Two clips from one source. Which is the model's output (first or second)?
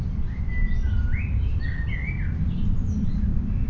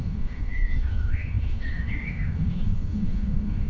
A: second